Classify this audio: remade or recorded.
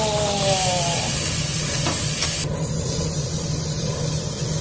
recorded